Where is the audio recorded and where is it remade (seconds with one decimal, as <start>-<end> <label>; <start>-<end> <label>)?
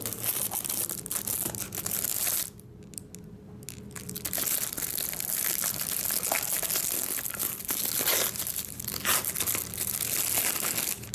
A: 0.0-11.1 recorded